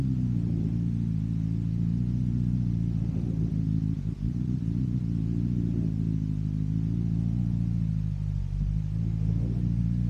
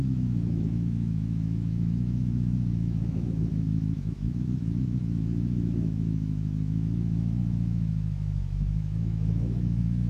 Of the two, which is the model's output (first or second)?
second